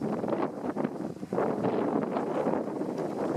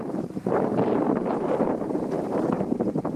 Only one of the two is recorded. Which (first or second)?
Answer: first